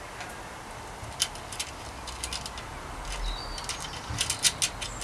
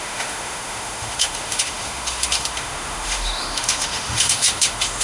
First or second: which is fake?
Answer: second